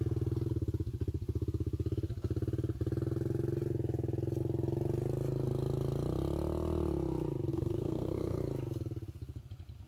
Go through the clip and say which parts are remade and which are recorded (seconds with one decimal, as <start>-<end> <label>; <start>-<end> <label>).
0.0-7.5 recorded; 7.5-8.4 remade; 8.4-9.9 recorded